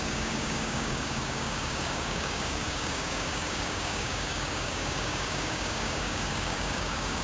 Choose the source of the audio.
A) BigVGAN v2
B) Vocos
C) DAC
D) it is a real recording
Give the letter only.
C